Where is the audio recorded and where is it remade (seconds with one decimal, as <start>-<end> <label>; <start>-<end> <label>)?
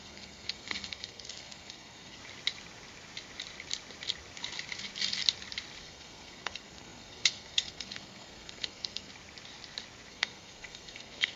0.0-2.2 remade; 2.2-5.8 recorded; 5.8-9.1 remade; 9.1-10.1 recorded; 10.1-11.4 remade